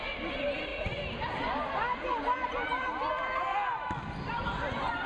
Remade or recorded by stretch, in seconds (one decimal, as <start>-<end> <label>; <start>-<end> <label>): 0.0-0.7 remade; 0.7-2.5 recorded; 2.5-5.1 remade

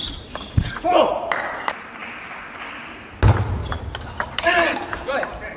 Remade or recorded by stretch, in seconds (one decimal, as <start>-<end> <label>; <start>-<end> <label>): 0.0-0.7 remade; 0.7-5.6 recorded

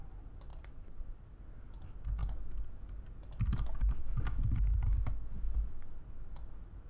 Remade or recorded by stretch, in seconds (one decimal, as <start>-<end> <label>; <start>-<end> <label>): 0.0-0.5 recorded; 0.5-1.4 remade; 1.4-6.9 recorded

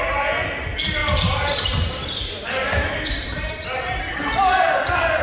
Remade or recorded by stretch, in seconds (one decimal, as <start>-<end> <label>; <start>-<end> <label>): 0.0-1.0 recorded; 1.0-4.1 remade; 4.1-5.2 recorded